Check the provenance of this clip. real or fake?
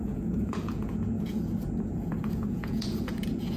fake